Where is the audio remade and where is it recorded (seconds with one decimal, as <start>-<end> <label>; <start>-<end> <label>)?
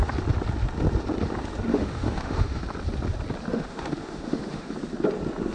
0.0-1.7 recorded; 1.7-2.6 remade; 2.6-3.5 recorded; 3.5-4.7 remade; 4.7-5.5 recorded